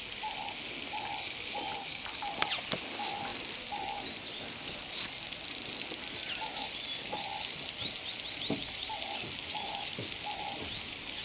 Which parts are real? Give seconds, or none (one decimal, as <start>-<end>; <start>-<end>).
0.0-11.2